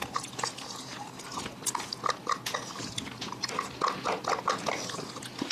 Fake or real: real